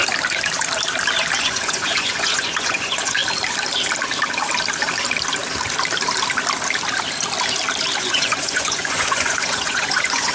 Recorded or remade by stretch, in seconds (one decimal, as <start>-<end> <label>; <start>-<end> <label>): 0.0-1.4 recorded; 1.4-3.2 remade; 3.2-8.0 recorded; 8.0-10.3 remade